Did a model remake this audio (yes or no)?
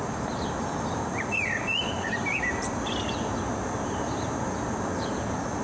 no